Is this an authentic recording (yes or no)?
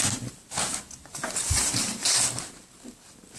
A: yes